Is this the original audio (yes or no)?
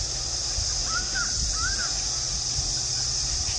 yes